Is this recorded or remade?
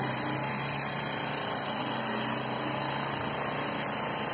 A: recorded